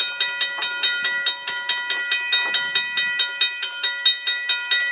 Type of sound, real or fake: real